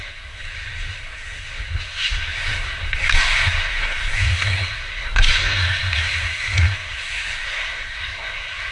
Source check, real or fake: fake